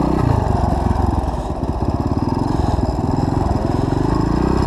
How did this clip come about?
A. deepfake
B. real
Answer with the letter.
B